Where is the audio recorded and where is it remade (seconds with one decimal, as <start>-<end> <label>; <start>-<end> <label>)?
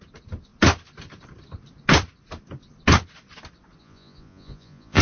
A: 0.0-3.8 recorded; 3.8-5.0 remade